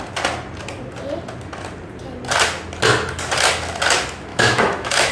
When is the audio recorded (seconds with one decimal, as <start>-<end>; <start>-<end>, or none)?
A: 0.0-4.3